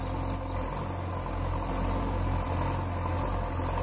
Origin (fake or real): real